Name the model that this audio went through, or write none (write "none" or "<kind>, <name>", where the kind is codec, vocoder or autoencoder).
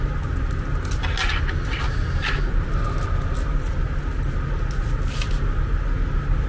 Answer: none